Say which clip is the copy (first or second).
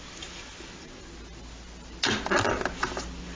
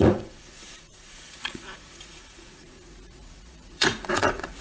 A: second